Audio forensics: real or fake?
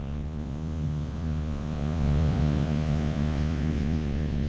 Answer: fake